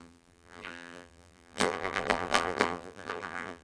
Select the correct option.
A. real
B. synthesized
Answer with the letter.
B